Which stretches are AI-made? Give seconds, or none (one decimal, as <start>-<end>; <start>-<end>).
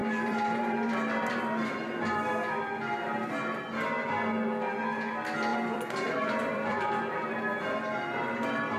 0.0-0.9; 5.5-7.2